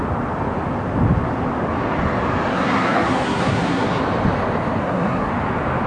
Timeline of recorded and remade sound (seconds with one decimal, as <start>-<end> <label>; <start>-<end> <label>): 0.0-2.5 recorded; 2.5-4.0 remade; 4.0-4.8 recorded; 4.8-5.3 remade; 5.3-5.9 recorded